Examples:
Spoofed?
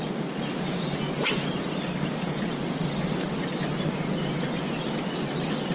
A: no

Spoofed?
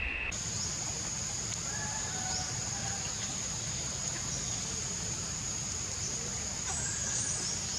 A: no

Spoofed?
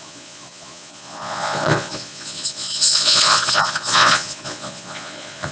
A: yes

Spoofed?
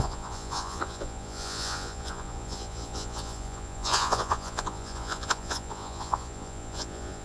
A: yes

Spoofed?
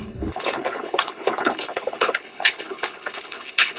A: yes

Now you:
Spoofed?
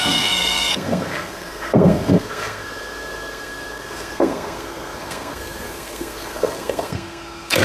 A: yes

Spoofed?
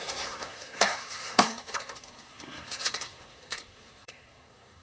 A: yes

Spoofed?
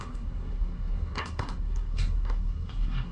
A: yes